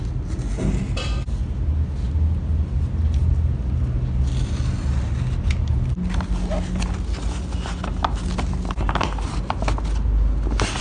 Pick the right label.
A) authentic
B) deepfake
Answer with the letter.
A